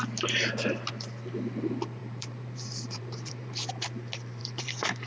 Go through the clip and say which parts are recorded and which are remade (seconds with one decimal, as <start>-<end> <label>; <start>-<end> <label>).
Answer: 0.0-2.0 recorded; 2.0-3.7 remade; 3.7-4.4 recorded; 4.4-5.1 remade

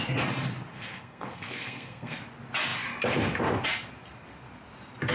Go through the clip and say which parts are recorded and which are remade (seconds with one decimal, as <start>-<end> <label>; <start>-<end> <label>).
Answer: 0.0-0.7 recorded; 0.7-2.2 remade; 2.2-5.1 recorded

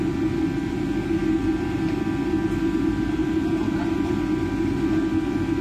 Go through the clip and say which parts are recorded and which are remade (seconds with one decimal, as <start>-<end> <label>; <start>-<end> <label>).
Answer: 0.0-3.2 recorded; 3.2-4.0 remade; 4.0-5.6 recorded

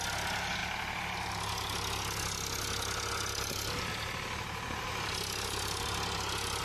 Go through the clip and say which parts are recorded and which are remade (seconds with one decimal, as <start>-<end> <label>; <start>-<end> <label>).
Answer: 0.0-6.6 recorded